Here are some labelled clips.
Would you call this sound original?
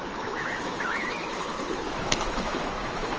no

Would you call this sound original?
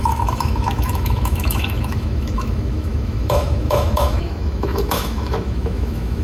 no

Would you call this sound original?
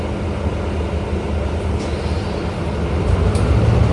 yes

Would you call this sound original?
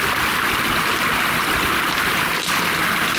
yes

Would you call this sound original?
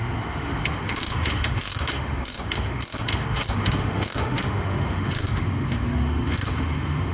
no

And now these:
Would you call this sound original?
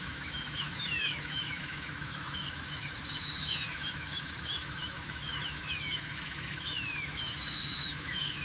no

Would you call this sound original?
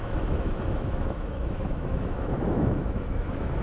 no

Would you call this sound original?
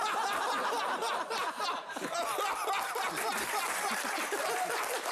yes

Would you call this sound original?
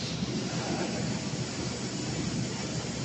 yes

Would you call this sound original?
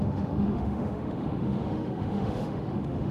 no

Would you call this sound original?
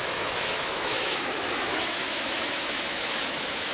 no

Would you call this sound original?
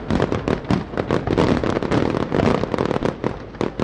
yes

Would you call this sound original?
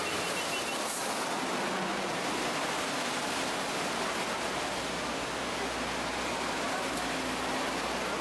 yes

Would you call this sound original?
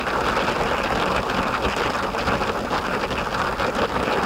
yes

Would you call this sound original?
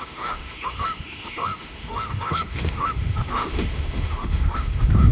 no